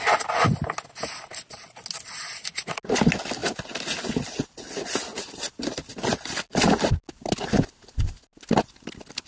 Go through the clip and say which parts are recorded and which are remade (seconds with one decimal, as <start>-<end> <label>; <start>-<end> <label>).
0.0-9.3 recorded